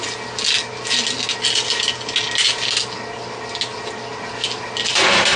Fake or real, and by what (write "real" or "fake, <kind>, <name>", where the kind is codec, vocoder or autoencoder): real